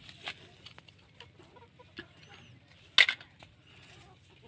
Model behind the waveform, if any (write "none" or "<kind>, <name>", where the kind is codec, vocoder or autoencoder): none